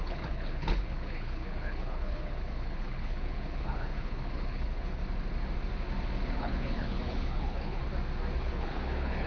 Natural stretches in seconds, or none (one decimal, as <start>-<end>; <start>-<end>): 5.0-6.4; 7.8-8.4